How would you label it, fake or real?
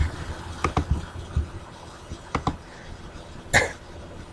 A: real